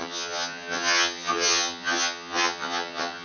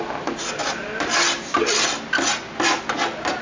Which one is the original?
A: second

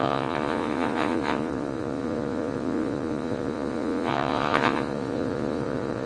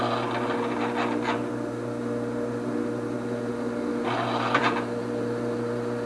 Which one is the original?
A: second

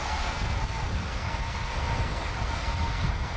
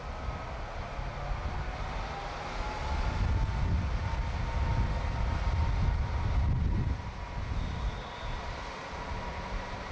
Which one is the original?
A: second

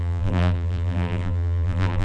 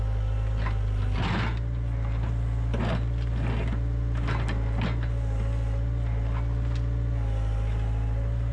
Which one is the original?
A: second